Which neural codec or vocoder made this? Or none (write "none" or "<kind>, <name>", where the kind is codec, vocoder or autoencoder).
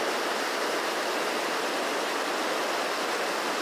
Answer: none